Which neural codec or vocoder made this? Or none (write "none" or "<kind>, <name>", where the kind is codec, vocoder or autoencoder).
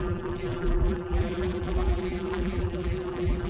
vocoder, BigVGAN v2